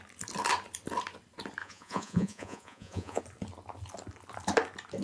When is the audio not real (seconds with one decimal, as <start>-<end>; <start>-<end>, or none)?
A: 1.6-3.2